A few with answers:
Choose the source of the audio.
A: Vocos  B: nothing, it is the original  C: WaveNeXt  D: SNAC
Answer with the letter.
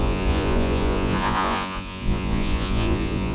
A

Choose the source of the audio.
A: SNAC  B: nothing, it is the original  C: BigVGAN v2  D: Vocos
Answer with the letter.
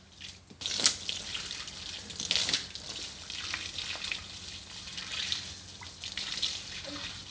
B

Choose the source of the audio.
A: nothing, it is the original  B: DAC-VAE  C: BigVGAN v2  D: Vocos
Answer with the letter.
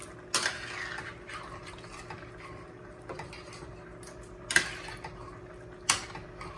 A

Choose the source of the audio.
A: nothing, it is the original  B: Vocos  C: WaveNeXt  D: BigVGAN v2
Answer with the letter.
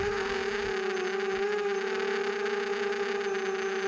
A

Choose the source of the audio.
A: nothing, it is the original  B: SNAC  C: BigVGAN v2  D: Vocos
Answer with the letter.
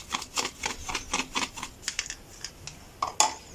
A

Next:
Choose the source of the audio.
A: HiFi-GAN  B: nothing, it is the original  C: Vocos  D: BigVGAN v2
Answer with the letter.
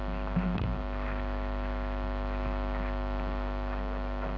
B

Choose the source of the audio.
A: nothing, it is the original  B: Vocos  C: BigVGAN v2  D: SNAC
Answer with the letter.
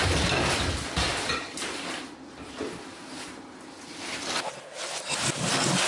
A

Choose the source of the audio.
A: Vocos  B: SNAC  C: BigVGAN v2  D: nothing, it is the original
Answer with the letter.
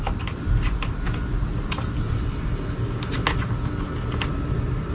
D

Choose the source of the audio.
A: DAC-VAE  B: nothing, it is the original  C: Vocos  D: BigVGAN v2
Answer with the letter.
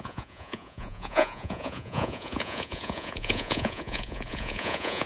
C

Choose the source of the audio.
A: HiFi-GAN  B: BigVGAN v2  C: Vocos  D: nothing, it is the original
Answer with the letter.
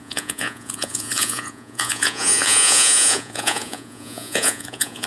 C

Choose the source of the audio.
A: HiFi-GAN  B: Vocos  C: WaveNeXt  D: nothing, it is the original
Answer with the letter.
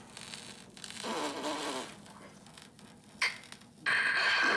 D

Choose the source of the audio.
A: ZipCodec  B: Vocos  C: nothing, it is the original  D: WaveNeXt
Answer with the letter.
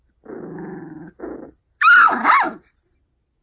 C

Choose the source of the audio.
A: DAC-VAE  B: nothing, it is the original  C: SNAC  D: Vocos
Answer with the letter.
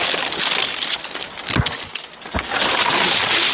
B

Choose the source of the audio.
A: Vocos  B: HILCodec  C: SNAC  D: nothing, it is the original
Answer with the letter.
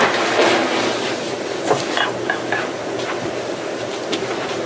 D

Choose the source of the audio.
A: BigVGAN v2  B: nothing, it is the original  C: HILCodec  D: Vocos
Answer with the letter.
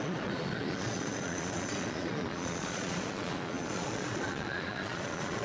D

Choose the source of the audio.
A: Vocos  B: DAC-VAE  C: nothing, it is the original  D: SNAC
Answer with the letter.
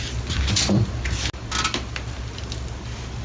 C